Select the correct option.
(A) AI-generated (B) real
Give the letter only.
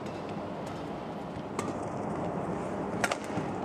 B